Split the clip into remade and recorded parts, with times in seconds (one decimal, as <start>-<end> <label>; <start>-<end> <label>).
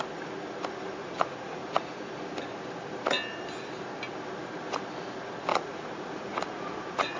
0.0-1.0 recorded; 1.0-2.0 remade; 2.0-5.5 recorded; 5.5-7.2 remade